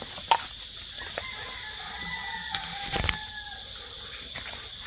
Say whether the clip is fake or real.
real